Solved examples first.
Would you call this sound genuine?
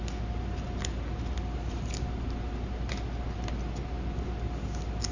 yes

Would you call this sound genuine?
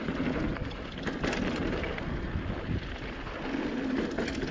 yes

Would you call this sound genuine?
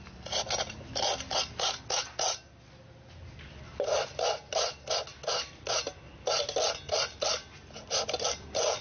yes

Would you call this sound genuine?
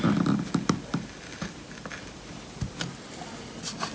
yes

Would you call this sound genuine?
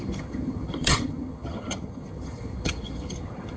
no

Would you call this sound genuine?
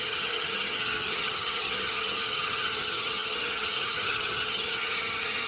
no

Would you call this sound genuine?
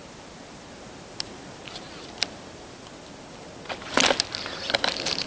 yes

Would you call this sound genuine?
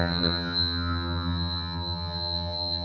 no